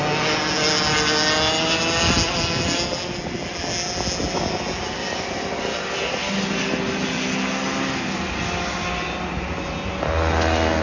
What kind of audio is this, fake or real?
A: real